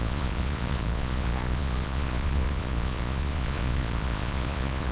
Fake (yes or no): yes